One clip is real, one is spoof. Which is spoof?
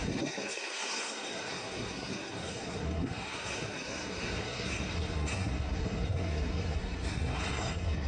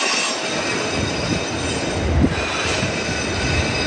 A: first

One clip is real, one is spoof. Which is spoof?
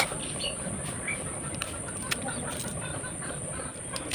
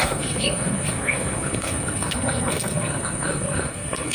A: second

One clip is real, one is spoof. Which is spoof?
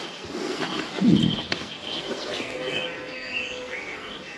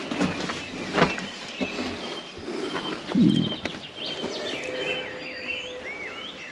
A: first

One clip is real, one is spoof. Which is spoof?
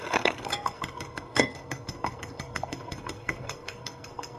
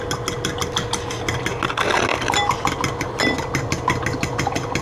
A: first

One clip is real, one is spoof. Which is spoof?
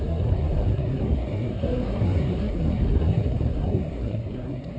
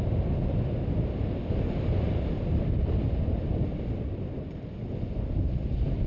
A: first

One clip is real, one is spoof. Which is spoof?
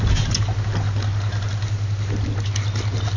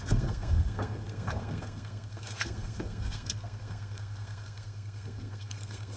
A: second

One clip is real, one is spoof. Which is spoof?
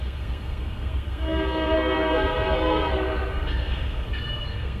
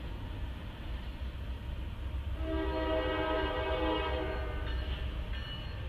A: first